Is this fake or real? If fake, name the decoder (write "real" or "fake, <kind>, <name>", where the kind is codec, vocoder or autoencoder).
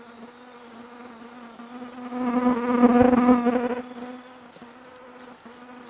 real